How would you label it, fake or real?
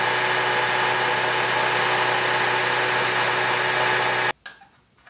real